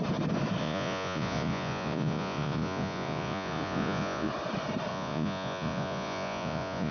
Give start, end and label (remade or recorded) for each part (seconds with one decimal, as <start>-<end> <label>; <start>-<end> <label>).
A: 0.0-0.6 recorded; 0.6-4.3 remade; 4.3-4.9 recorded; 4.9-6.9 remade